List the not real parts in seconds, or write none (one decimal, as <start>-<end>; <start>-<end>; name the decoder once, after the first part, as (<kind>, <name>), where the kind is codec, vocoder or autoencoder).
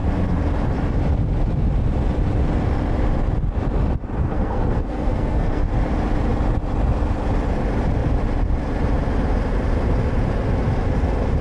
4.2-5.6 (codec, SNAC)